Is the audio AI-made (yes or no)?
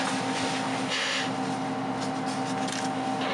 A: no